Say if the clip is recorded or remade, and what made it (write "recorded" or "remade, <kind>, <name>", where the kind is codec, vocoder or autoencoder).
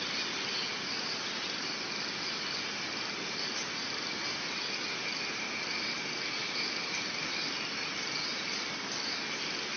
recorded